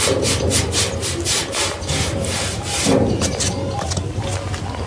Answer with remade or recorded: recorded